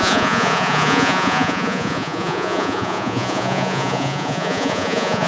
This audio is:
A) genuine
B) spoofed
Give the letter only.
B